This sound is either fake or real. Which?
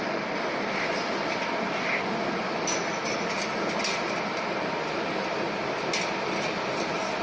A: real